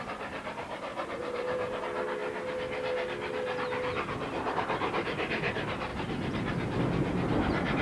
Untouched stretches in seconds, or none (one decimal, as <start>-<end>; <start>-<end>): 0.0-0.9; 1.8-5.9; 6.8-7.8